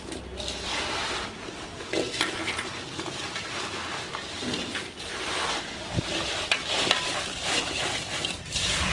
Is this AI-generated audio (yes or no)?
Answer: no